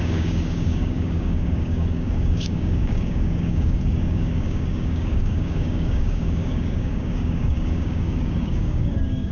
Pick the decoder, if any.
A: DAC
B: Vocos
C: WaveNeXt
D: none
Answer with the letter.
A